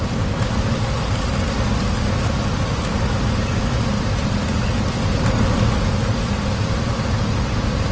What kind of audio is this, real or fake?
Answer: real